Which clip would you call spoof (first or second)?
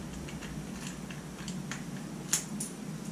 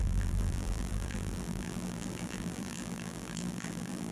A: second